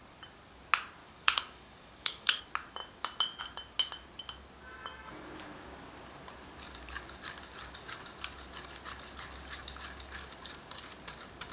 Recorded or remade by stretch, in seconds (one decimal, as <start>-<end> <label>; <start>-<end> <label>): 0.0-1.0 recorded; 1.0-2.4 remade; 2.4-11.5 recorded